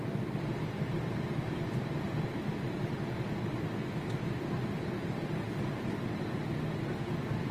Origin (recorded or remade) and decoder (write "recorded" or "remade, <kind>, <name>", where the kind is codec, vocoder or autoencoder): recorded